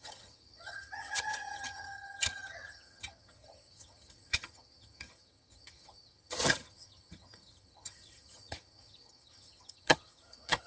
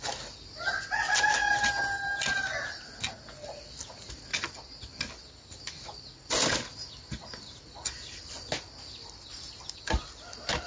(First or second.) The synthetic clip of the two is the first